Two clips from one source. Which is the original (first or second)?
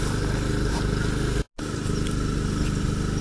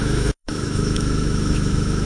first